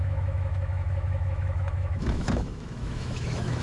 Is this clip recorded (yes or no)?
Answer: no